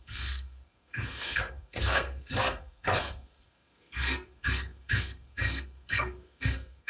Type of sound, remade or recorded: remade